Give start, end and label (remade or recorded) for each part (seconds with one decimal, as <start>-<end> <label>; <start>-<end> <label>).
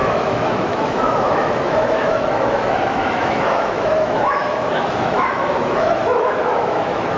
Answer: 0.0-7.2 remade